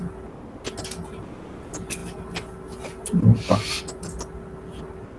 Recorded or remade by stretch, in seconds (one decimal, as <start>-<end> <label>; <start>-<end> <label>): 0.0-5.2 recorded